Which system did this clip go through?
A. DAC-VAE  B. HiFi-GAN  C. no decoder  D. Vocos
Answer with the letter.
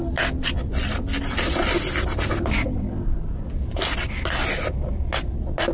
C